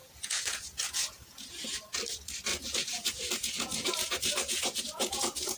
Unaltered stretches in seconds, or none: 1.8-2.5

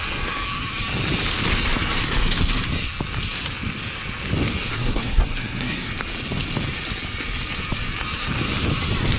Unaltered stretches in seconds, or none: 0.0-4.7; 5.9-9.2

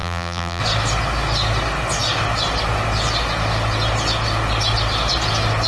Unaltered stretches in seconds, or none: 0.6-5.7

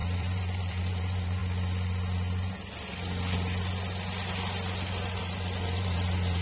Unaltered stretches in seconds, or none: 1.4-5.2